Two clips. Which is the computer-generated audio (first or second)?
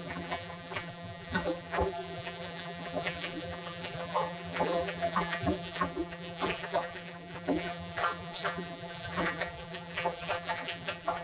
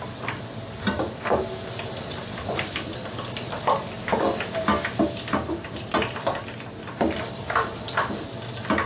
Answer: first